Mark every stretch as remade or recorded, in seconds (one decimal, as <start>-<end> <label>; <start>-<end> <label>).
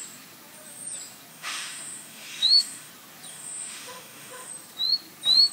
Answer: 0.0-1.3 recorded; 1.3-2.9 remade; 2.9-3.3 recorded; 3.3-4.5 remade; 4.5-5.5 recorded